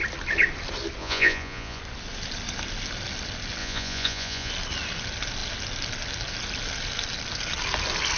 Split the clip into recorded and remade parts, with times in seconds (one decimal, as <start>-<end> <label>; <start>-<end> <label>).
0.0-1.0 recorded; 1.0-1.8 remade; 1.8-3.6 recorded; 3.6-4.5 remade; 4.5-8.2 recorded